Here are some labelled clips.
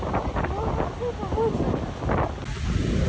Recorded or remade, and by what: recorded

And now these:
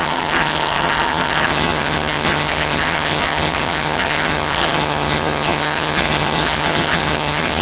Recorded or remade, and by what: remade, vocoder, HiFi-GAN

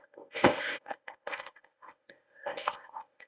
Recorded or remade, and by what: remade, codec, ZipCodec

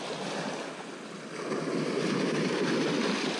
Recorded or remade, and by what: recorded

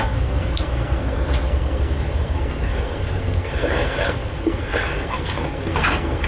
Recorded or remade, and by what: remade, codec, SNAC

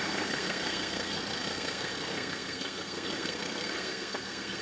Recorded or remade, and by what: remade, codec, SNAC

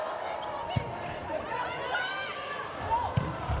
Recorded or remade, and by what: recorded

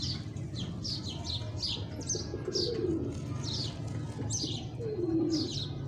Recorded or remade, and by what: recorded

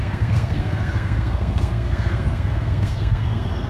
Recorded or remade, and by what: remade, codec, SNAC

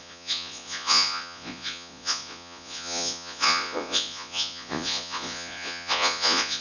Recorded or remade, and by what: remade, vocoder, Vocos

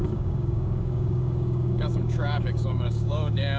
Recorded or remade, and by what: remade, codec, DAC